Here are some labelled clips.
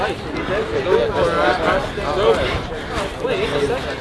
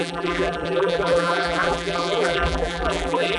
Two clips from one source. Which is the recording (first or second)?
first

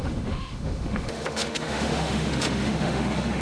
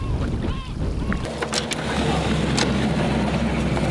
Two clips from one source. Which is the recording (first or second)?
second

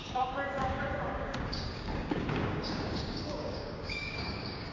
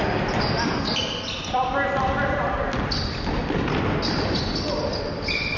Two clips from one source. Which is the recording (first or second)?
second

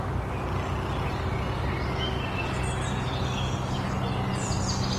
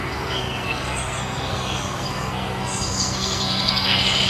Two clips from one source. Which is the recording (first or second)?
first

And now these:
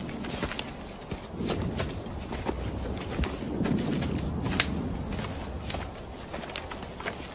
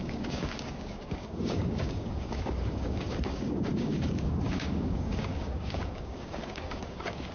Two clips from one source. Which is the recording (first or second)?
first